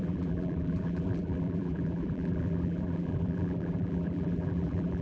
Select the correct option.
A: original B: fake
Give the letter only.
B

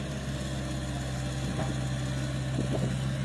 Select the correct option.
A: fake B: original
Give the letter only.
B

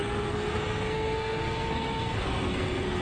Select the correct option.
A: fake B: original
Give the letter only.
A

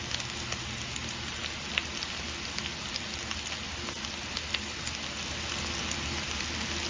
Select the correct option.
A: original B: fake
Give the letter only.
A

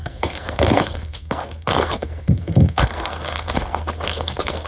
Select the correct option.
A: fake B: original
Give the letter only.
A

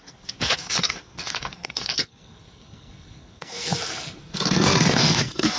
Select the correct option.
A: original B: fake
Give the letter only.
B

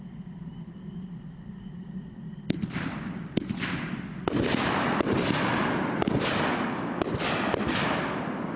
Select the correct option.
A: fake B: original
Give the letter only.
B